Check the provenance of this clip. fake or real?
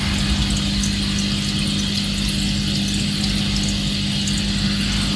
real